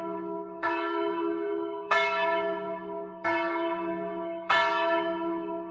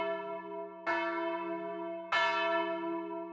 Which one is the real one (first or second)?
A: second